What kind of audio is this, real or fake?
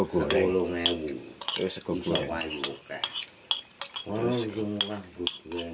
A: real